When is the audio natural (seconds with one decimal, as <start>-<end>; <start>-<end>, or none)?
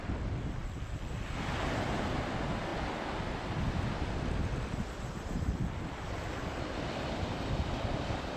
0.0-8.4